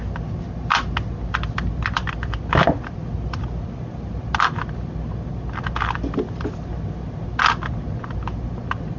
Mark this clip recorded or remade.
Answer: recorded